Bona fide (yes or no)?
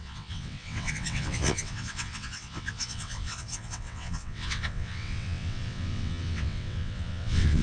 no